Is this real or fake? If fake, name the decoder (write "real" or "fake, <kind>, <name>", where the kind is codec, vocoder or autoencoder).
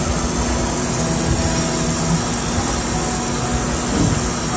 real